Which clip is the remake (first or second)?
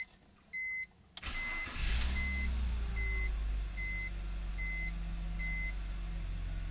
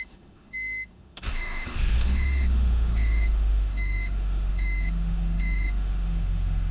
second